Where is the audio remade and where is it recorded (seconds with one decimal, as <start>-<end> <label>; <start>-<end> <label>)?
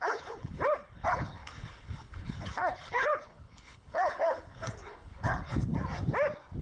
0.0-5.7 remade; 5.7-6.6 recorded